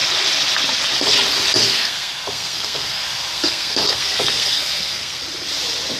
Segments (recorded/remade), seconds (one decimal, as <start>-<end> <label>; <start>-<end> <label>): 0.0-1.6 recorded; 1.6-5.2 remade; 5.2-6.0 recorded